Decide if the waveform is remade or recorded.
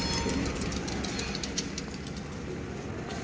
recorded